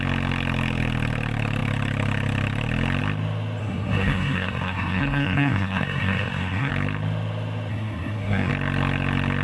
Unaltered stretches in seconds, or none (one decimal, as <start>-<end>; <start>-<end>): 0.0-3.6; 6.7-7.7; 8.5-9.4